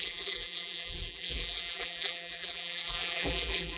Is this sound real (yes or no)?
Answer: no